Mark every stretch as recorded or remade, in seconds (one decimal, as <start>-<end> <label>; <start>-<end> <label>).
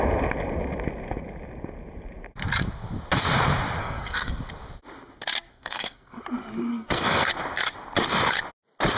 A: 0.0-3.8 recorded; 3.8-4.5 remade; 4.5-5.5 recorded; 5.5-6.2 remade; 6.2-6.7 recorded; 6.7-7.3 remade; 7.3-9.0 recorded